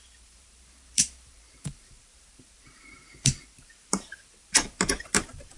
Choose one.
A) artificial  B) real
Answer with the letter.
A